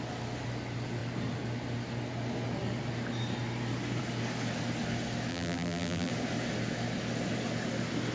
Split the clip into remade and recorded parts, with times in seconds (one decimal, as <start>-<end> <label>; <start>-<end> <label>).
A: 0.0-5.3 recorded; 5.3-6.1 remade; 6.1-8.1 recorded